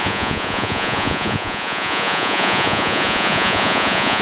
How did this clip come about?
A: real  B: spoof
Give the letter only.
B